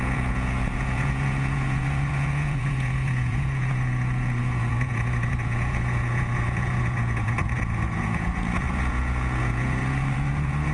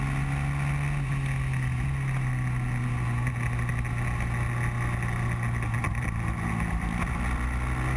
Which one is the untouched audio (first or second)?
second